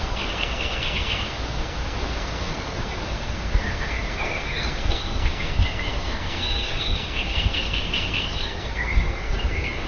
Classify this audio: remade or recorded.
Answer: remade